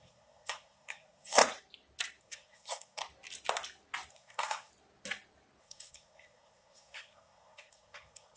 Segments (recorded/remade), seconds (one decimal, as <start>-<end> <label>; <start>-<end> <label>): 0.0-1.4 remade; 1.4-2.2 recorded; 2.2-3.0 remade; 3.0-4.1 recorded; 4.1-4.7 remade; 4.7-5.6 recorded; 5.6-8.4 remade